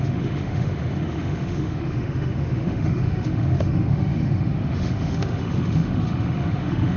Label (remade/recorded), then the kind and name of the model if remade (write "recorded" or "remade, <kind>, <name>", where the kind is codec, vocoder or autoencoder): remade, autoencoder, DAC-VAE